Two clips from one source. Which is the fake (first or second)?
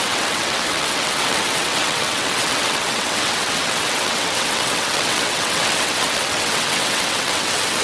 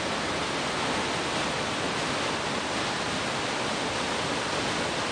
first